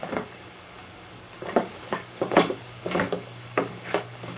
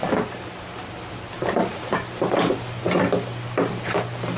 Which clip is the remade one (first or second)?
first